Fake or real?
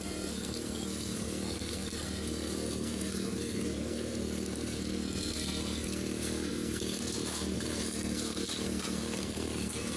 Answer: fake